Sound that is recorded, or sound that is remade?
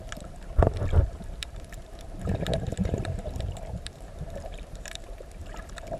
remade